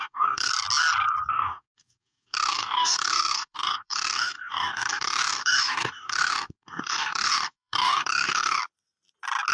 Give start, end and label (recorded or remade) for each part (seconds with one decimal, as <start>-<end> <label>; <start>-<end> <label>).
0.0-0.5 remade; 0.5-1.3 recorded; 1.3-8.6 remade; 8.6-9.5 recorded